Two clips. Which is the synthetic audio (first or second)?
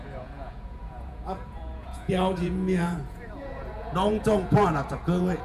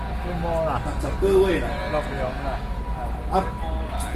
first